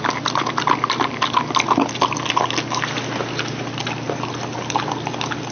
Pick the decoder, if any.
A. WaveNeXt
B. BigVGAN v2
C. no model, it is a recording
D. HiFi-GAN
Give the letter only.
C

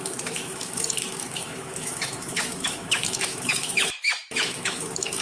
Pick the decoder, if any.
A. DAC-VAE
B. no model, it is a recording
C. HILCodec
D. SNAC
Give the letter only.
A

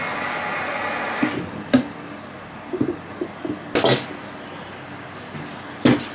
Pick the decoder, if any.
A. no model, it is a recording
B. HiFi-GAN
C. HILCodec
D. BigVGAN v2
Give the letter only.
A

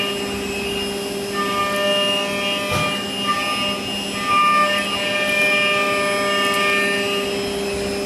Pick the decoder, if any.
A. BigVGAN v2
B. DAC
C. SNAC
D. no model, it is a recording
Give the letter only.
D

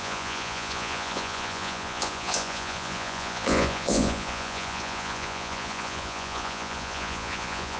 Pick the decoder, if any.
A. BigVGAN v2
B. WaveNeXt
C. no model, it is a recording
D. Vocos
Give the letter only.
D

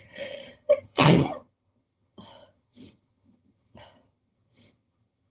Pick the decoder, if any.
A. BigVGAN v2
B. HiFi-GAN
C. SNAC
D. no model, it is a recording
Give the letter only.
B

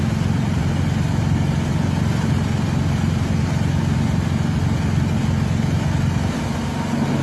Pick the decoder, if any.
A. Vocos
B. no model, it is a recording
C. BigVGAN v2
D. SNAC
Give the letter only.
B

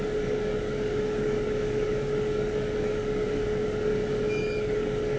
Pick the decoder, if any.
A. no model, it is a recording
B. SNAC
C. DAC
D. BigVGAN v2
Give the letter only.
C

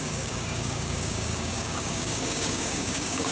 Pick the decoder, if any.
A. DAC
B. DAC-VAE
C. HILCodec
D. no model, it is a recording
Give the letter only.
A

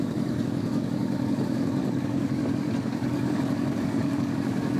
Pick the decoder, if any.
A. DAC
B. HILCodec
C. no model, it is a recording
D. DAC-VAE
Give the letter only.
A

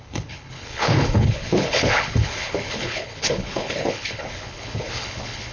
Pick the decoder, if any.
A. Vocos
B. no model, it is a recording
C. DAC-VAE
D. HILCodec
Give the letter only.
D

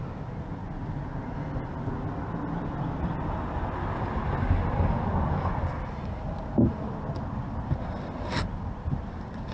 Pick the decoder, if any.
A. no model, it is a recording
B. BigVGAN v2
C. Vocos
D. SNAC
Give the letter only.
A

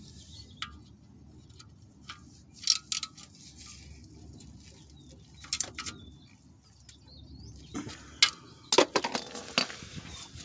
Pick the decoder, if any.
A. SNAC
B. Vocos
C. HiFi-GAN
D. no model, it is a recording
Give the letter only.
D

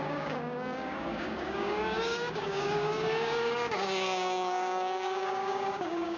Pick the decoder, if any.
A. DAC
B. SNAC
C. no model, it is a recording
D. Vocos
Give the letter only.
A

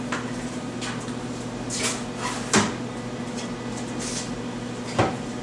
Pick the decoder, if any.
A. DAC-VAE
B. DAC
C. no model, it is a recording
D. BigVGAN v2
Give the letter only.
C